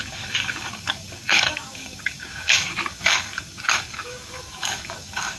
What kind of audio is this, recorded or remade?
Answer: remade